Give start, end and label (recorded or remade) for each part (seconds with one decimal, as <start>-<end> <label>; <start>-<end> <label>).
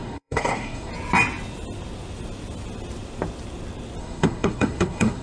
0.0-0.9 remade; 0.9-4.0 recorded; 4.0-5.2 remade